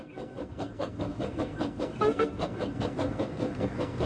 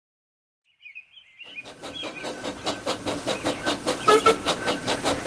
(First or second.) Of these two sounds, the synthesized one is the first